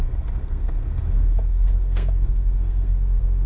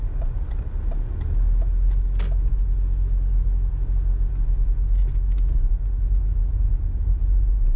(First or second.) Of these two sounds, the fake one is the first